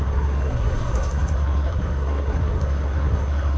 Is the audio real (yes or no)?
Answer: no